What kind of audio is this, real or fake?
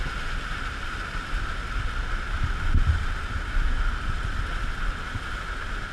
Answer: real